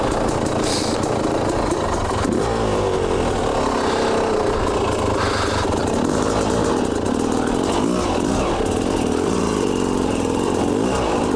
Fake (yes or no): no